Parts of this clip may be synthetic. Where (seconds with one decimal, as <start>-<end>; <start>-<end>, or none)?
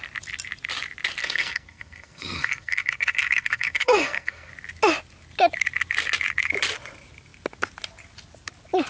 1.2-4.5